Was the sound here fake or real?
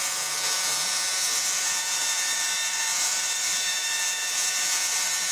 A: fake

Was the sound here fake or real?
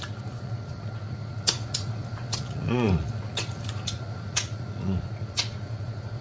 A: fake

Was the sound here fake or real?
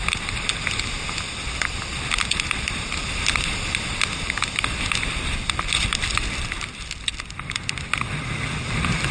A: real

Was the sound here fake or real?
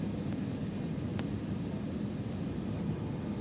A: real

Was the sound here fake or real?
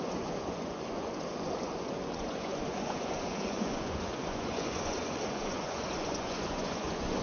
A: fake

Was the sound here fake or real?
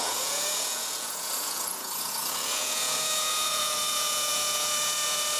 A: fake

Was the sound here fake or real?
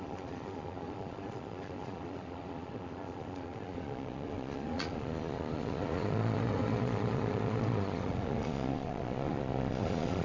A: fake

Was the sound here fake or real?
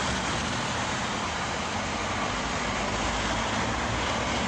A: real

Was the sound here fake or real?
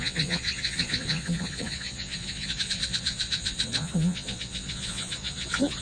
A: fake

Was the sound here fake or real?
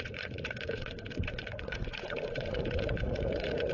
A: fake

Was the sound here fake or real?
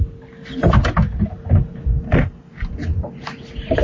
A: real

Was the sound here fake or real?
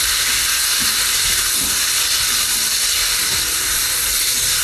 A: real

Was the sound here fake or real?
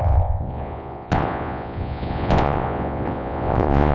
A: fake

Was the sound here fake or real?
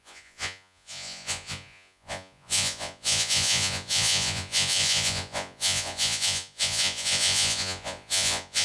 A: fake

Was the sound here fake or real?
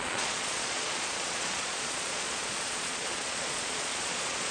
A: fake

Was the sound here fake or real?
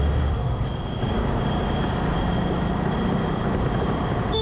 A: real